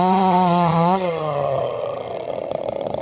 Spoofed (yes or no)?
yes